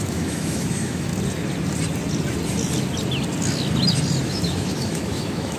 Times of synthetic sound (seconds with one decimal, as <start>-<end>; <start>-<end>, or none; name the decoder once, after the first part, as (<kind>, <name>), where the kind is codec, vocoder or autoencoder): 0.0-1.1 (autoencoder, DAC-VAE); 4.2-5.6